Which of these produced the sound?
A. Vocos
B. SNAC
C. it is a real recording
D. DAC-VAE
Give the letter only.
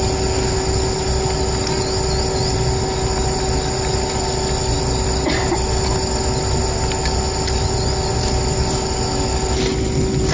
C